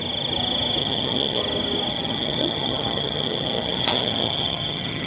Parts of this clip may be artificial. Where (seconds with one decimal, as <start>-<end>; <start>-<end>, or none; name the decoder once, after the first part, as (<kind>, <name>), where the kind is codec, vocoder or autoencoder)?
0.8-1.4 (vocoder, HiFi-GAN); 1.9-5.1

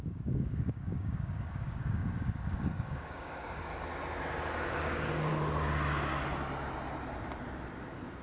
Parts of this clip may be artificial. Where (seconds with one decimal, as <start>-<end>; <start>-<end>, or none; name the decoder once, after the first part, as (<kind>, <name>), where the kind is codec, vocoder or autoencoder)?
0.0-3.7 (codec, DAC); 4.8-5.3

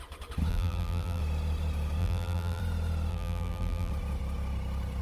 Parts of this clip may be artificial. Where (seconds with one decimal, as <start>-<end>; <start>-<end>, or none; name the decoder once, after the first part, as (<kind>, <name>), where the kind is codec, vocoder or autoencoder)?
0.5-1.2 (vocoder, BigVGAN v2); 2.0-2.6; 3.1-3.9

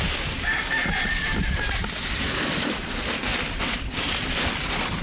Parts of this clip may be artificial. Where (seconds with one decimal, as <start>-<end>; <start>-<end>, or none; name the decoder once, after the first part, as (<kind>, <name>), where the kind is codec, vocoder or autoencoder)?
none

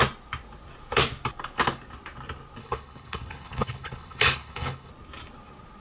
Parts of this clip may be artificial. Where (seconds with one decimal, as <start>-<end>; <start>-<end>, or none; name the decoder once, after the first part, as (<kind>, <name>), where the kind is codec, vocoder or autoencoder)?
2.6-4.9 (codec, HILCodec)

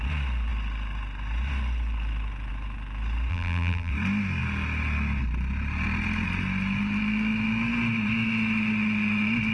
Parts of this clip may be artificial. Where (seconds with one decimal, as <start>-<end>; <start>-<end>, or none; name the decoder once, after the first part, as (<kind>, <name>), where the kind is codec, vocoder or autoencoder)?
3.3-3.9 (vocoder, BigVGAN v2)